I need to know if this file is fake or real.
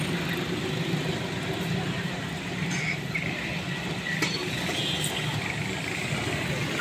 real